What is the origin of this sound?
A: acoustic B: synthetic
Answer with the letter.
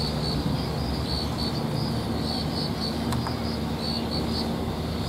A